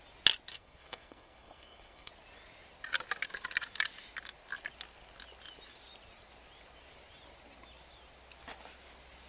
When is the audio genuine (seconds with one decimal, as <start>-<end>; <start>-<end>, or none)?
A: 0.0-0.5; 2.1-9.3